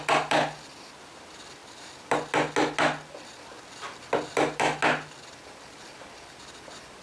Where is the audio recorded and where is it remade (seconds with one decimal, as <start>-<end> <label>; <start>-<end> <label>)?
0.0-7.0 recorded